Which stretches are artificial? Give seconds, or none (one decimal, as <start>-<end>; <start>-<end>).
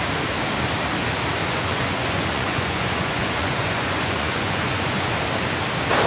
1.4-5.1